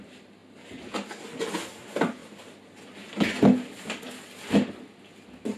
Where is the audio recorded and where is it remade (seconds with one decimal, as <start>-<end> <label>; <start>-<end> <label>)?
0.0-5.6 recorded